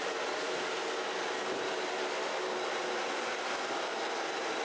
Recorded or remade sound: remade